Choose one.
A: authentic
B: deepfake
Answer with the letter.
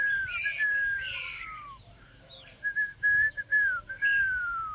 B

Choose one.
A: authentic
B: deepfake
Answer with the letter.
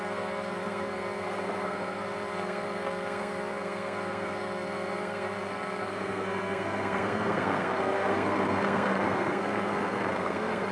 B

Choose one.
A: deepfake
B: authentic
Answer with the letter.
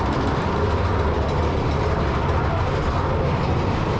B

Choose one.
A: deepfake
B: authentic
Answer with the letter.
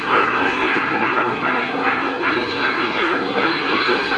A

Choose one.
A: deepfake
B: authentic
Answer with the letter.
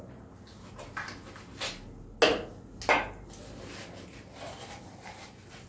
B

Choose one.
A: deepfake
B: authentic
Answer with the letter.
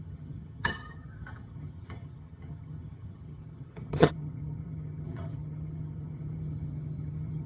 A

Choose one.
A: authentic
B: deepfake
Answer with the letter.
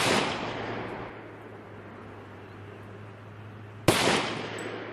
A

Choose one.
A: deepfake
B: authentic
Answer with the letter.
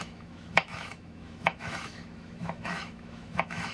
A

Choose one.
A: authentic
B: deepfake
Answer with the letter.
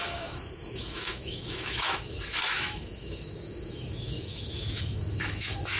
B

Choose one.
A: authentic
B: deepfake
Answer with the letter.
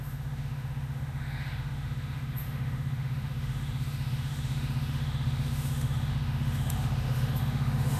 B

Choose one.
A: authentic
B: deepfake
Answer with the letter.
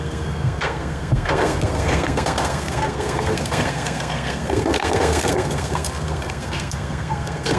B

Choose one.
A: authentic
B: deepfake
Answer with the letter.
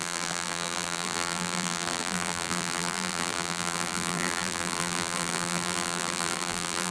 B